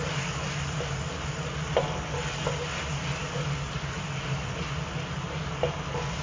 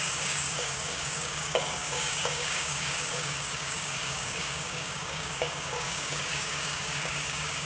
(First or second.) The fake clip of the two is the second